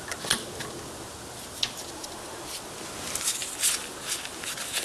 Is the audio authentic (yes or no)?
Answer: yes